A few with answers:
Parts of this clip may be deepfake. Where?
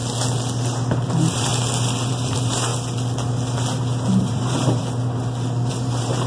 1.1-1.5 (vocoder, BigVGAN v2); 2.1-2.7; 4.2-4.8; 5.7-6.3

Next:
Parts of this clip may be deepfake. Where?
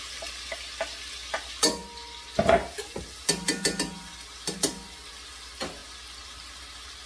none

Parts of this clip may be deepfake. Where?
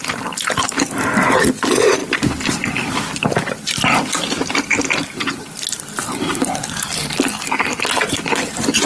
none